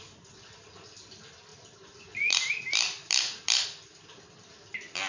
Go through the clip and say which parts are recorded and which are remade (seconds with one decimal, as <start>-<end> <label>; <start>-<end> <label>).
0.0-5.1 recorded